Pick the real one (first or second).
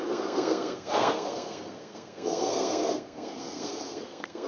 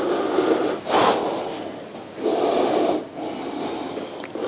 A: second